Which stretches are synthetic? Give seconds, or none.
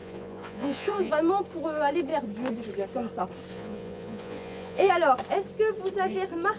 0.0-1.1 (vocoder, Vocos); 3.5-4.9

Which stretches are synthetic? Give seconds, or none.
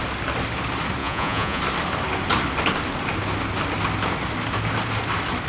1.0-1.6 (vocoder, Vocos)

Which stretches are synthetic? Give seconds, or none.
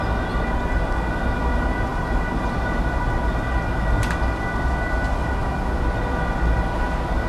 none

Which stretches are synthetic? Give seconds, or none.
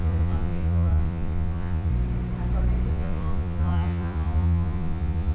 0.0-1.9 (vocoder, Vocos); 2.9-5.3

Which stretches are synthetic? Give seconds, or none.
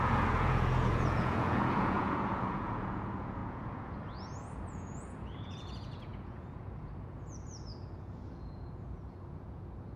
0.0-10.0 (vocoder, Vocos)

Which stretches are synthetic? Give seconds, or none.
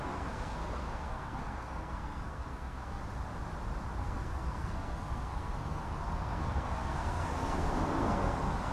0.0-3.0 (codec, SNAC); 4.0-8.7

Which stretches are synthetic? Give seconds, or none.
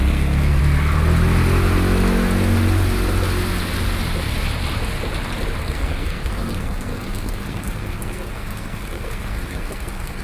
0.0-0.6 (codec, SNAC); 5.6-10.2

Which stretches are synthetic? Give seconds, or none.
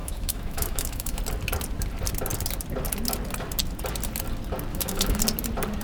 0.0-1.2 (autoencoder, DAC-VAE); 4.7-5.2